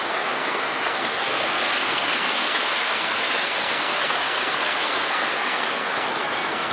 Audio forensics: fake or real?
fake